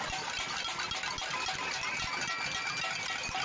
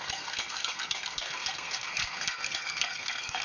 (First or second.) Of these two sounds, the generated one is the second